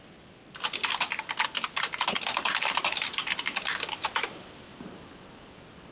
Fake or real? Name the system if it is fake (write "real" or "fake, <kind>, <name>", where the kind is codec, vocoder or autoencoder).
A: real